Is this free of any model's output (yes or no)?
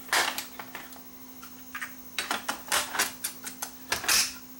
yes